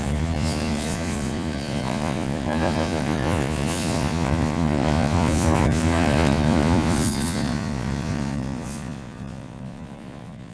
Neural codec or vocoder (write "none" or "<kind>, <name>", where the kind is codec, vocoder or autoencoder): vocoder, Vocos